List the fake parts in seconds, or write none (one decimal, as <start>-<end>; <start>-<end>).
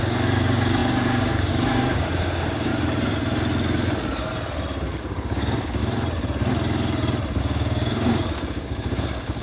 0.0-2.7; 5.0-5.8; 7.4-9.4